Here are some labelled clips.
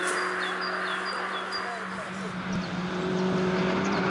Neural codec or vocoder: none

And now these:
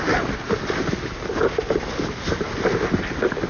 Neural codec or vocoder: none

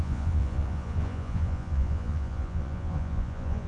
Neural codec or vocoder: vocoder, Vocos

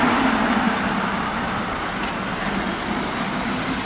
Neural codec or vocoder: none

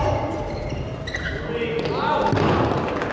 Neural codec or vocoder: none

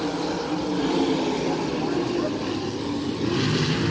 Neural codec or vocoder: none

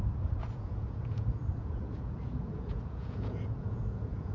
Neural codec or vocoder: vocoder, Vocos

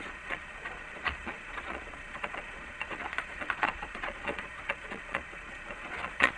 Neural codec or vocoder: vocoder, Vocos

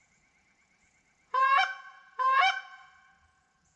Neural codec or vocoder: vocoder, Vocos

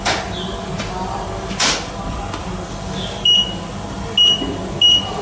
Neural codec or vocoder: none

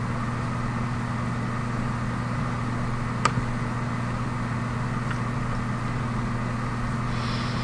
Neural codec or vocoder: none